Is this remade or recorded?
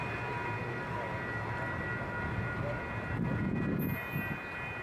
recorded